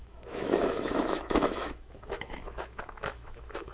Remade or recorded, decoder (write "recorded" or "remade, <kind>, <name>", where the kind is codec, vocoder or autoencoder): remade, autoencoder, DAC-VAE